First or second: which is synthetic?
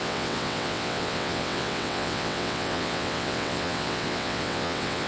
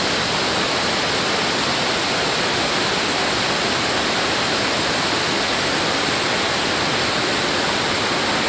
first